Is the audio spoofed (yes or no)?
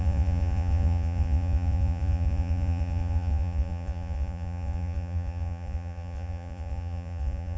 yes